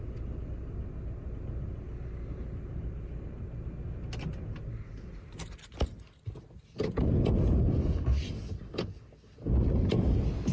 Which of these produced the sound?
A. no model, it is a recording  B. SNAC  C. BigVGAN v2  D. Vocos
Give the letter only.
A